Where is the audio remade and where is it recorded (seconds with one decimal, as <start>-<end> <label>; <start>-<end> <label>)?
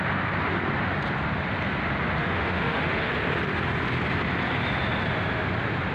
0.0-2.2 recorded; 2.2-3.1 remade; 3.1-5.9 recorded